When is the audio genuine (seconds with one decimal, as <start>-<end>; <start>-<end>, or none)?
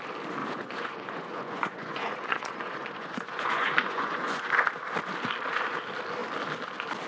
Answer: 0.0-0.4; 4.5-7.1